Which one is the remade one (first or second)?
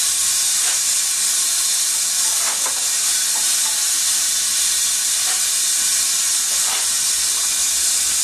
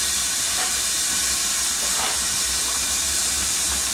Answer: second